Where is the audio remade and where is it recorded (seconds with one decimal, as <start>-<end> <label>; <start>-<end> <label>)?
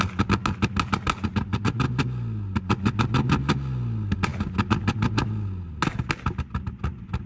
0.0-7.3 recorded